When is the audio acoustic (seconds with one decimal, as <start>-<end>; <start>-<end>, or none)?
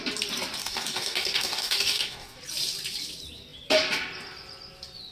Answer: 0.0-0.6; 2.4-5.1